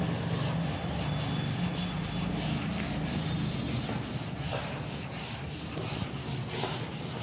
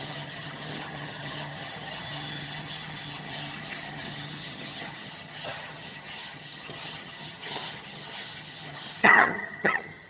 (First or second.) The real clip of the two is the first